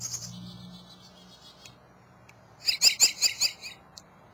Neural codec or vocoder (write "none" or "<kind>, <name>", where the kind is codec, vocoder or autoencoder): none